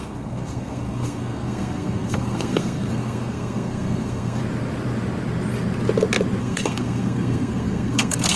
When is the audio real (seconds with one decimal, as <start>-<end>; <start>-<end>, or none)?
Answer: 4.4-6.4